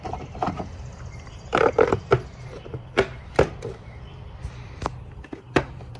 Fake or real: fake